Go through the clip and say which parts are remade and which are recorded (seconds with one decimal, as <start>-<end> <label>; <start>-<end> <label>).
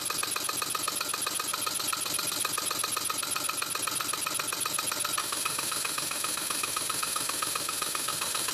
0.0-5.2 recorded; 5.2-8.5 remade